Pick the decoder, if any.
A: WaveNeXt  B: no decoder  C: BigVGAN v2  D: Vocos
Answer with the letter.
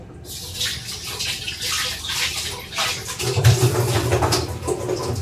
C